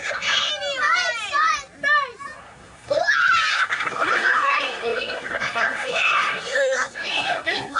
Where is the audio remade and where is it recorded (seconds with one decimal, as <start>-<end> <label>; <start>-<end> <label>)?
0.0-0.5 remade; 0.5-2.4 recorded; 2.4-3.0 remade; 3.0-3.5 recorded; 3.5-7.8 remade